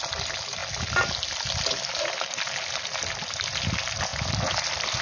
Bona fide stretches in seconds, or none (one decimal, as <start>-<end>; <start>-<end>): 0.0-5.0